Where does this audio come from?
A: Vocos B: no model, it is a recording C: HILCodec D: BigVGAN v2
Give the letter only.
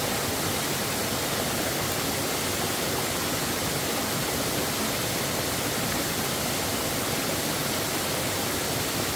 B